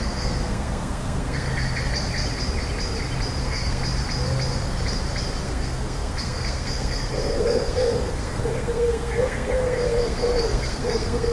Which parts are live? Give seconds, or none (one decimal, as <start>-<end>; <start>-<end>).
1.5-3.4; 3.8-5.4